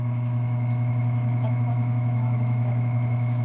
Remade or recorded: remade